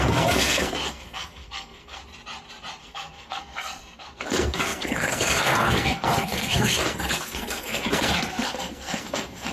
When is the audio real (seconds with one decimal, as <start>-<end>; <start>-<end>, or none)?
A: 2.0-2.8